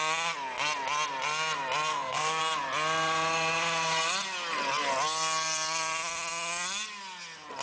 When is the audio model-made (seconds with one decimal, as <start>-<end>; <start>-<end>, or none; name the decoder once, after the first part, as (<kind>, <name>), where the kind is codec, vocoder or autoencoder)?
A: 1.9-2.4 (codec, SNAC)